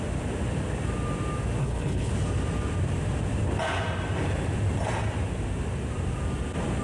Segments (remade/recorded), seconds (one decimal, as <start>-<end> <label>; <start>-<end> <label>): 0.0-1.6 recorded; 1.6-2.1 remade; 2.1-6.8 recorded